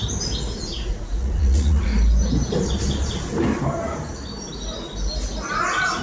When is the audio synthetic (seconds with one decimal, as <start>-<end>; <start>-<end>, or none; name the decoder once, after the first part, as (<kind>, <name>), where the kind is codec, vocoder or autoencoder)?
0.6-1.9 (vocoder, Vocos); 5.5-6.0